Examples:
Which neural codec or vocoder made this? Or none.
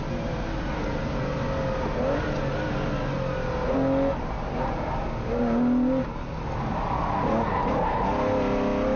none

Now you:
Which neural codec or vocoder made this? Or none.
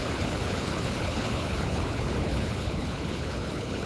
codec, HILCodec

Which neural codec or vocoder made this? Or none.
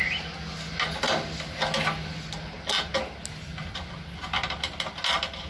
none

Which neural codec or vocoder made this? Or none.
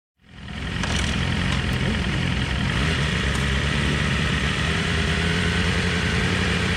vocoder, BigVGAN v2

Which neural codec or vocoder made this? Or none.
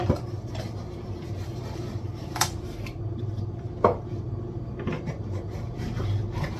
vocoder, BigVGAN v2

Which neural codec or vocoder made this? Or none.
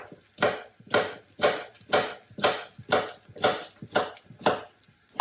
none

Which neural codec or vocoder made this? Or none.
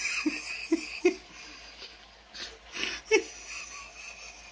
none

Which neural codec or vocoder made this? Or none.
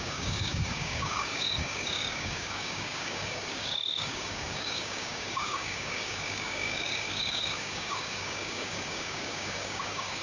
codec, DAC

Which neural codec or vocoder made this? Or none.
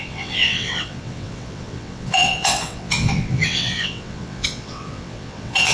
vocoder, WaveNeXt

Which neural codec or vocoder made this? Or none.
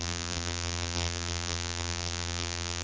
vocoder, BigVGAN v2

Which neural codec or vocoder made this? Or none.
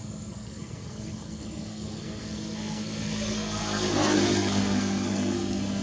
codec, SNAC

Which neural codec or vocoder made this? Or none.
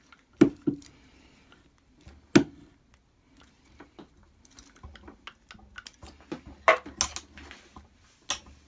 none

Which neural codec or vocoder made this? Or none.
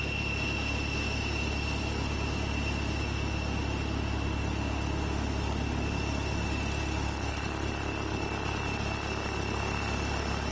none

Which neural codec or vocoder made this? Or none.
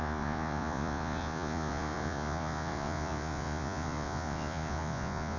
vocoder, Vocos